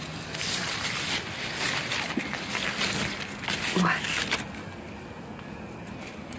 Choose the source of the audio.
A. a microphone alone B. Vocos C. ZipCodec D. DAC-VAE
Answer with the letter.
A